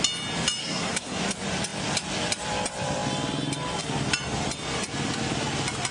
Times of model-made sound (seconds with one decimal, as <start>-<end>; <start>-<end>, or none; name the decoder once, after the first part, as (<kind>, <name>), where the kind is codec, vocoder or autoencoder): 0.6-1.2 (codec, SNAC)

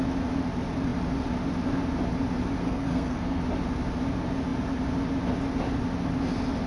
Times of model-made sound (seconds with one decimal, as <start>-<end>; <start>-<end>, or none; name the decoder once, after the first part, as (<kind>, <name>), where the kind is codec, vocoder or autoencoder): 2.6-3.4 (codec, SNAC)